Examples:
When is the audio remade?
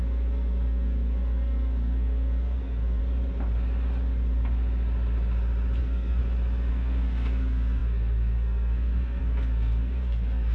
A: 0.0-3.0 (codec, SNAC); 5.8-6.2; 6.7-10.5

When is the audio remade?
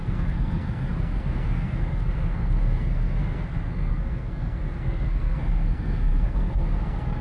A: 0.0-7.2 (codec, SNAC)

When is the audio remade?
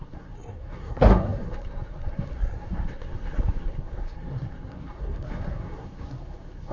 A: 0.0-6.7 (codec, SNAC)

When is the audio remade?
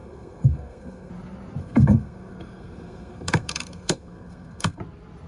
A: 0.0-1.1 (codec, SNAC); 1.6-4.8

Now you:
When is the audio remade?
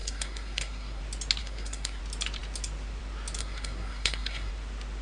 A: 0.0-1.0 (codec, SNAC); 1.4-2.0; 3.4-4.5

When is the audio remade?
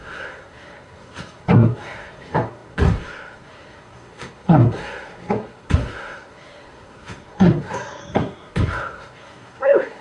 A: 0.0-10.0 (codec, SNAC)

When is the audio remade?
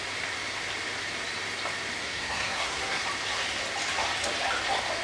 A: 2.0-3.0 (codec, SNAC)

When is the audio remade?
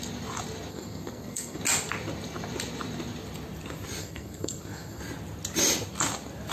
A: 0.7-1.6 (codec, SNAC); 4.0-5.0